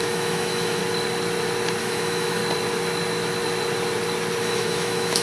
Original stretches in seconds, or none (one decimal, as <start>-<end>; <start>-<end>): 0.8-1.8; 2.4-4.4